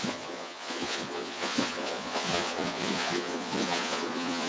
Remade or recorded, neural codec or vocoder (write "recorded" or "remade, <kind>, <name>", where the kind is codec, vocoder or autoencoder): remade, vocoder, Vocos